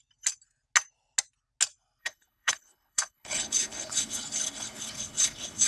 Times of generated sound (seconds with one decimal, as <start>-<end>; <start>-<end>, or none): 2.0-5.7